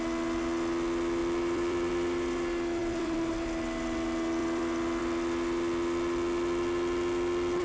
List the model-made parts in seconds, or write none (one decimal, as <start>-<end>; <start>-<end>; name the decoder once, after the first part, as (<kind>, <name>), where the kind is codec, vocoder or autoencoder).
1.2-1.9 (vocoder, BigVGAN v2); 2.8-3.3; 4.4-5.0